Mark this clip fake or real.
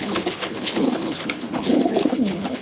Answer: fake